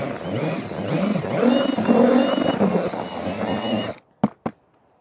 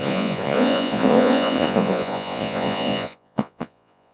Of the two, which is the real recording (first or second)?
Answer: first